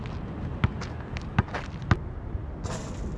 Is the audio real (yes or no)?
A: yes